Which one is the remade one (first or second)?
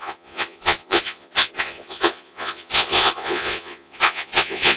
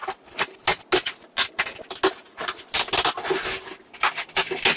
first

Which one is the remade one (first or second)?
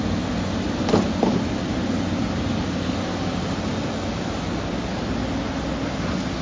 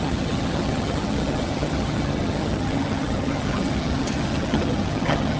second